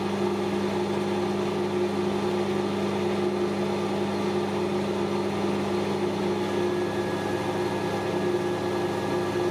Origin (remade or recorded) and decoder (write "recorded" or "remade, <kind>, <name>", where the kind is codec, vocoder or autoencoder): recorded